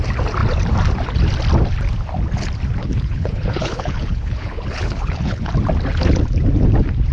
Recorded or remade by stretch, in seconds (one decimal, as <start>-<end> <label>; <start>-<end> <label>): 0.0-2.8 recorded; 2.8-5.5 remade; 5.5-7.1 recorded